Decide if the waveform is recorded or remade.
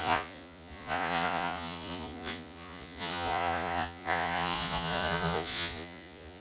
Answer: remade